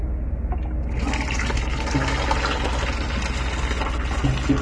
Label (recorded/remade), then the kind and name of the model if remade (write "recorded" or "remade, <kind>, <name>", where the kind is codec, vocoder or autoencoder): recorded